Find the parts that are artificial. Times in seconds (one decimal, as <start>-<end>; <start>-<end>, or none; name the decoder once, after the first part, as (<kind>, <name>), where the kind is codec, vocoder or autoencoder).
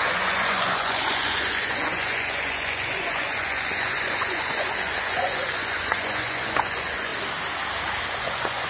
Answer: 0.0-7.1 (vocoder, Vocos); 8.1-8.7